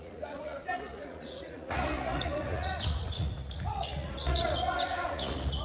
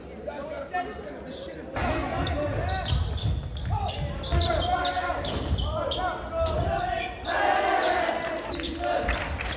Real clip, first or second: second